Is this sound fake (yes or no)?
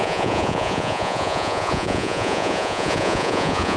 yes